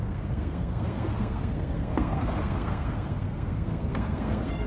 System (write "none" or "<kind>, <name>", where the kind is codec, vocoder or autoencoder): codec, SNAC